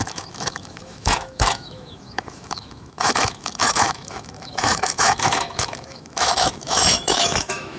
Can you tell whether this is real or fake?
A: fake